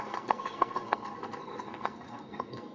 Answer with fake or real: fake